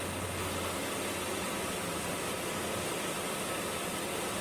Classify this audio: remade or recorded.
recorded